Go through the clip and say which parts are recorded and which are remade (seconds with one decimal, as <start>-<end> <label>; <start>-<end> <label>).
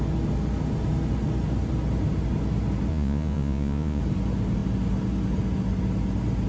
0.0-2.9 recorded; 2.9-4.0 remade; 4.0-6.5 recorded